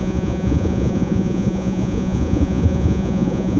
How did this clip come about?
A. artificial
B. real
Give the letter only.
A